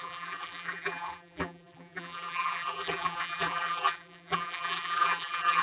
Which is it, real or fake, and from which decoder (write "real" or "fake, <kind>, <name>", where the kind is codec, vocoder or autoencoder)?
fake, vocoder, BigVGAN v2